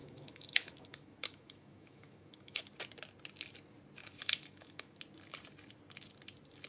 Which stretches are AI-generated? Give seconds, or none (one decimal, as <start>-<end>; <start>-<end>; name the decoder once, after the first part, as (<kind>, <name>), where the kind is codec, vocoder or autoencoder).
0.0-2.6 (autoencoder, DAC-VAE); 4.0-5.0